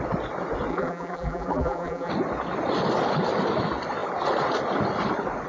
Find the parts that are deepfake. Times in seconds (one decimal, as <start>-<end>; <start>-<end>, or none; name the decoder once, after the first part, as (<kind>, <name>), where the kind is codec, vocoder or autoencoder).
0.7-2.1 (vocoder, BigVGAN v2)